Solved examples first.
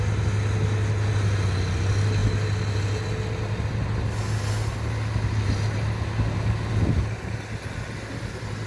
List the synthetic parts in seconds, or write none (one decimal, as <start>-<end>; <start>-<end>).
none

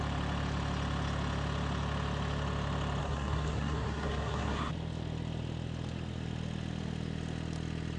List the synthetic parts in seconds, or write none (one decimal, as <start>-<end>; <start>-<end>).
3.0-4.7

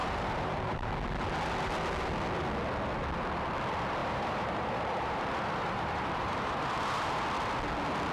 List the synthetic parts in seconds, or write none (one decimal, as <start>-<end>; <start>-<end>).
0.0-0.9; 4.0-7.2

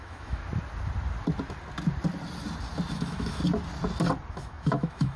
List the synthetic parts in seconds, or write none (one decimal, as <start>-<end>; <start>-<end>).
0.0-0.4; 2.9-3.4; 4.3-5.2